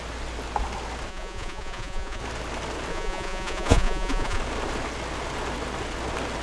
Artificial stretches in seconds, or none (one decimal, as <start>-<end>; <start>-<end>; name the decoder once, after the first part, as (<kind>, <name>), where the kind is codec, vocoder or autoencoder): 1.1-2.2 (vocoder, Vocos); 2.9-4.4